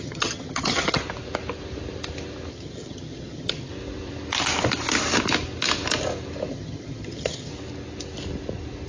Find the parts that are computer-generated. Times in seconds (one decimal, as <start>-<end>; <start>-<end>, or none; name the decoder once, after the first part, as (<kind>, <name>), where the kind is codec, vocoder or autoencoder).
0.0-1.0 (vocoder, HiFi-GAN); 2.5-3.7; 6.5-7.5